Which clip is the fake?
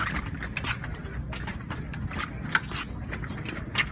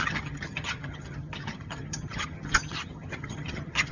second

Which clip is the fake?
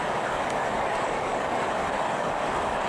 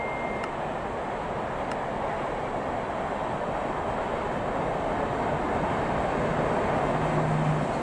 first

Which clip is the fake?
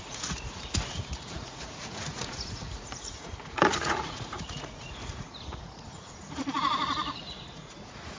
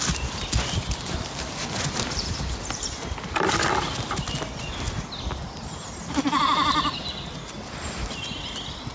first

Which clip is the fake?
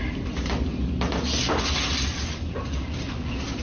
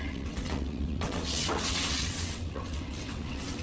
second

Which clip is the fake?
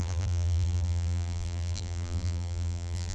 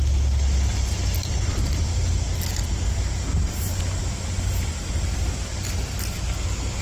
first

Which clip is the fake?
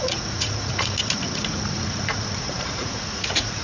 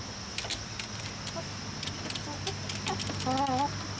first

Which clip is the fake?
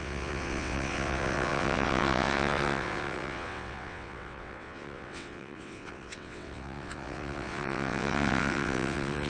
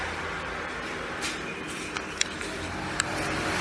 first